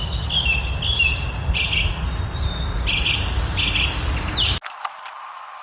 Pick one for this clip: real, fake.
real